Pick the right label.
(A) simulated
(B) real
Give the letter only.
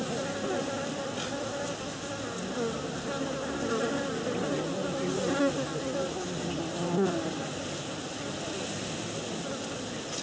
B